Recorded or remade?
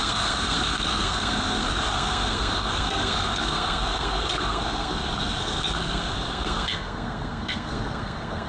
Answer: remade